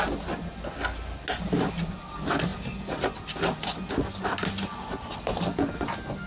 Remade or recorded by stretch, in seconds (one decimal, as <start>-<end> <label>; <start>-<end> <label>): 0.0-6.3 recorded